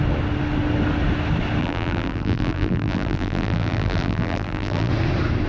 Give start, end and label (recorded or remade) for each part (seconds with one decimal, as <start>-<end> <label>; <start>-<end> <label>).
0.0-1.6 recorded; 1.6-4.9 remade; 4.9-5.5 recorded